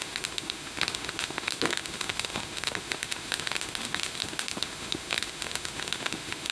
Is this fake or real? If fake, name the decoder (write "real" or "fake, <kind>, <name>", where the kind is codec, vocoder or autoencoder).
fake, autoencoder, DAC-VAE